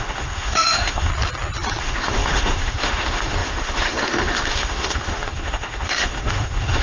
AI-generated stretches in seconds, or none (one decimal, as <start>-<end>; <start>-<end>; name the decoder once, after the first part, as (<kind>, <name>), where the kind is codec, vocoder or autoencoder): 0.0-1.1 (autoencoder, DAC-VAE); 1.8-6.8